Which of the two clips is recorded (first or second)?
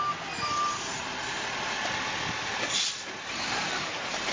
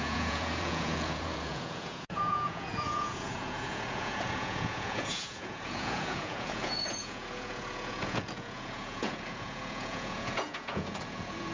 first